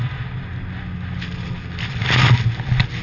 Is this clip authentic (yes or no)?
yes